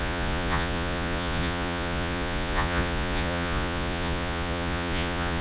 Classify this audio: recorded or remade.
remade